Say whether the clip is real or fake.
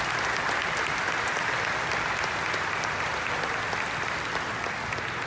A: real